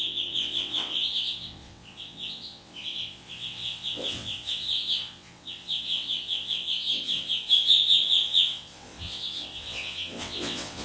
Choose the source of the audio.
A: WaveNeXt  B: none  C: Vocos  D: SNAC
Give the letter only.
A